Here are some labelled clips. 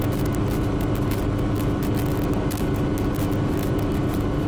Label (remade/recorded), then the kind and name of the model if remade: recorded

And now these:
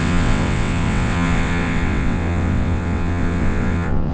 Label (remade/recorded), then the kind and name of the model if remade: remade, vocoder, WaveNeXt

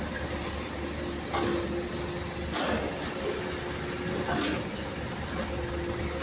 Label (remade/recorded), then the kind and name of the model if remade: recorded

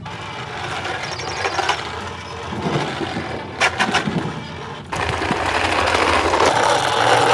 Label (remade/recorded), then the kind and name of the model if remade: recorded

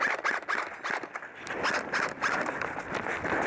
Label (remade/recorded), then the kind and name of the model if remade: recorded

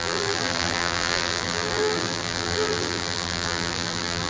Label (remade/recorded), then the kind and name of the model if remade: remade, vocoder, BigVGAN v2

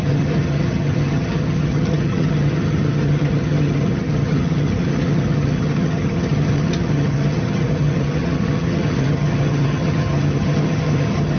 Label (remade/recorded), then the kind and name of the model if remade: remade, vocoder, HiFi-GAN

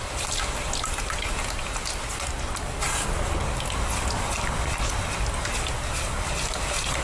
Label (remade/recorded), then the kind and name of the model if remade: recorded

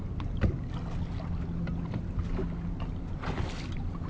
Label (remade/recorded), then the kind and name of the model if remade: recorded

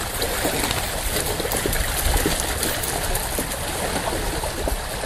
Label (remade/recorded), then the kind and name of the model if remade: recorded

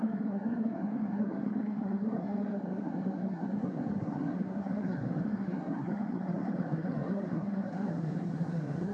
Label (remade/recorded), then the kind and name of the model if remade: remade, codec, SNAC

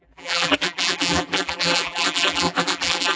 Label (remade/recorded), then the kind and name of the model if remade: remade, vocoder, BigVGAN v2